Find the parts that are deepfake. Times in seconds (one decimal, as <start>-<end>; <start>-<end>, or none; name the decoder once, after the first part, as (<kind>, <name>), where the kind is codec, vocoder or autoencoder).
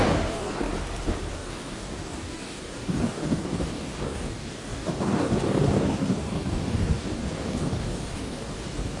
0.0-0.7 (codec, DAC); 1.3-9.0